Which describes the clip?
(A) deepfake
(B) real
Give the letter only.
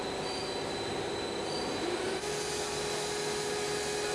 B